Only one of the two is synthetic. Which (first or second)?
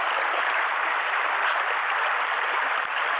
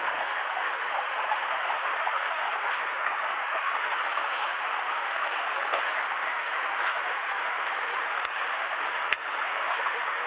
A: second